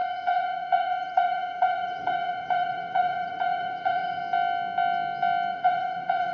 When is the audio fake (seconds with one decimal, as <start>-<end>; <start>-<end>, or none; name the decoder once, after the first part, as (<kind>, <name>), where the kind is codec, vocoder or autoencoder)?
0.0-4.2 (vocoder, Vocos); 5.5-6.3